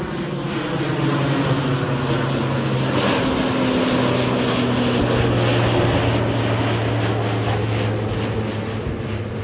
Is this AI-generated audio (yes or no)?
no